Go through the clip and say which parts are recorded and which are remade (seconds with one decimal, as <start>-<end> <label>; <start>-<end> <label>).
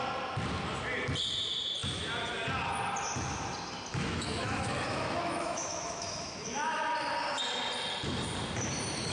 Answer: 0.0-3.9 recorded; 3.9-6.8 remade; 6.8-9.1 recorded